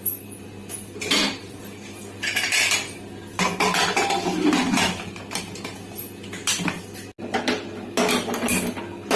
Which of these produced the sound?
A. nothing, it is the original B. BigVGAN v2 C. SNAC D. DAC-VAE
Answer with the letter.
A